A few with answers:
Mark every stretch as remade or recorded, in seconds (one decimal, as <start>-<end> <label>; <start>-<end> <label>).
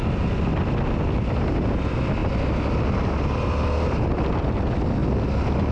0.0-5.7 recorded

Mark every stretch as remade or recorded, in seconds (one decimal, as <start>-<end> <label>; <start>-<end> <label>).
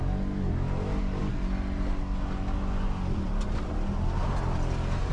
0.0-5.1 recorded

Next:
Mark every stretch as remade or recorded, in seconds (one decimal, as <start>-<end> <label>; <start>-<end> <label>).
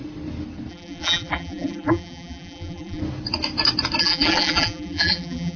0.0-0.7 recorded; 0.7-3.0 remade; 3.0-4.0 recorded; 4.0-5.6 remade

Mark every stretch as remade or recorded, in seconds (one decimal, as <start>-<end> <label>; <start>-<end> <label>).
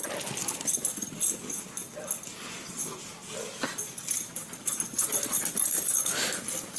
0.0-6.8 recorded